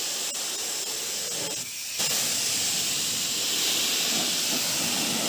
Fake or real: real